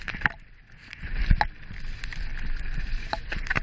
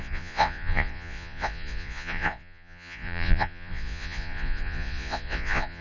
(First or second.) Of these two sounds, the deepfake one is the second